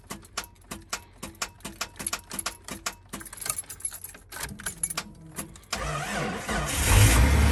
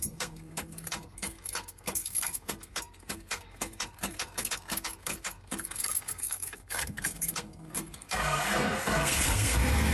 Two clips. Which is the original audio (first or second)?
first